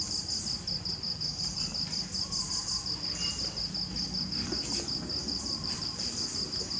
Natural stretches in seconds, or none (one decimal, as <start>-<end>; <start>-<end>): 0.0-5.2; 6.2-6.8